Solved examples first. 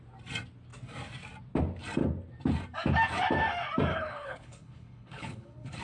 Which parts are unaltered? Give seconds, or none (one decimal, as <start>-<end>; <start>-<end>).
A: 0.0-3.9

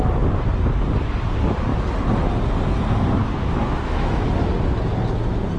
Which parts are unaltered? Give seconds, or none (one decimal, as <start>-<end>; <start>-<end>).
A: 0.0-3.2; 4.4-5.6

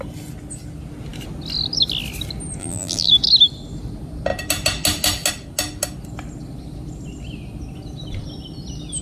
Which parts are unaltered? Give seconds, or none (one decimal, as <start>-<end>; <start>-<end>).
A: 0.0-2.6; 3.1-9.0

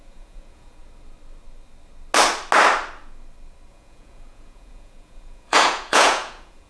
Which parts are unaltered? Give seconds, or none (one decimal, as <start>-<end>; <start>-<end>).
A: 0.8-3.7

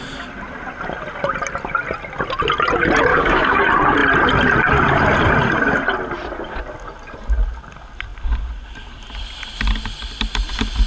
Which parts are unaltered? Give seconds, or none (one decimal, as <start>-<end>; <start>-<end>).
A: 0.0-3.1; 3.6-10.9